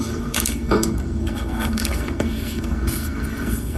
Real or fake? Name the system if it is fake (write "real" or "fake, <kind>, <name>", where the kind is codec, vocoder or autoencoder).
fake, codec, SNAC